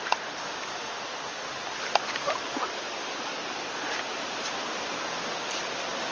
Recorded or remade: recorded